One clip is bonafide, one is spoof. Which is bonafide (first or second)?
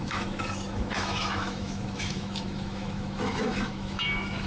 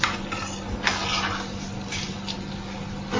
second